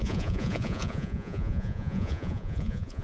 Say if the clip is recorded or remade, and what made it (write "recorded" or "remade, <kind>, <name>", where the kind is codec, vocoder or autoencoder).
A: remade, vocoder, Vocos